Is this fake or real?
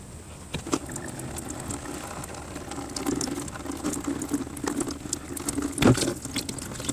real